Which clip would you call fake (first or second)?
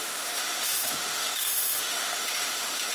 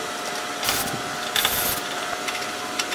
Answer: first